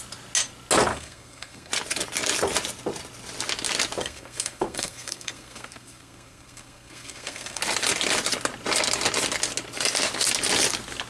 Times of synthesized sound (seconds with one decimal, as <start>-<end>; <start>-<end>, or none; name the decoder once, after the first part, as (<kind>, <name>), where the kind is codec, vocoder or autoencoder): 0.9-1.7 (codec, SNAC); 4.0-7.6